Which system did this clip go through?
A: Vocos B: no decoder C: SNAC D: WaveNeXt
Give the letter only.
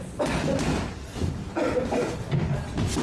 B